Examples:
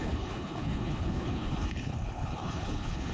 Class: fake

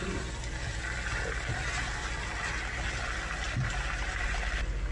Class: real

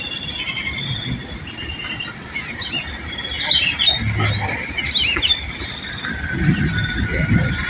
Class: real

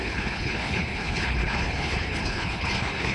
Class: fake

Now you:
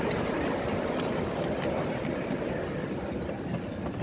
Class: real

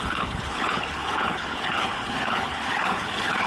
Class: fake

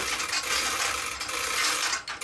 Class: real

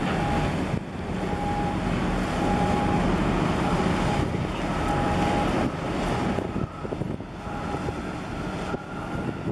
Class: real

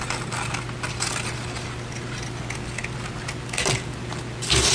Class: real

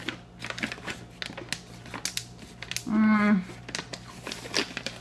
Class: real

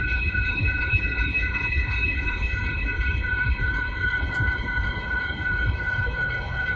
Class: fake